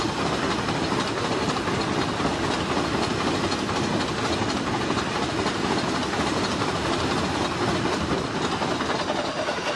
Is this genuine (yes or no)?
yes